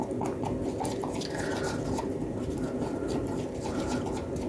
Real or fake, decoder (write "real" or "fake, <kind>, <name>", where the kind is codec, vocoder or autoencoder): real